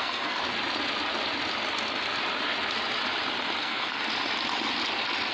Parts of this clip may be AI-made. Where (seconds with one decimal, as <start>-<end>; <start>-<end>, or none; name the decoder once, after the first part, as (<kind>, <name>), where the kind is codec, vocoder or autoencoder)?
0.0-0.4 (codec, SNAC); 3.6-4.0